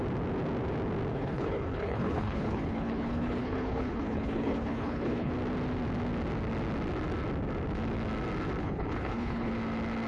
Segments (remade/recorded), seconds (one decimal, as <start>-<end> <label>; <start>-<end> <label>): 0.0-1.1 recorded; 1.1-5.3 remade; 5.3-8.6 recorded; 8.6-9.5 remade; 9.5-10.1 recorded